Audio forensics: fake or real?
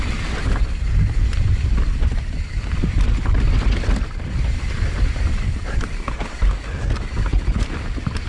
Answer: fake